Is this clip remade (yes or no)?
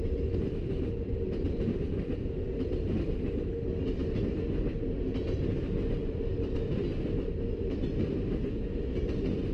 no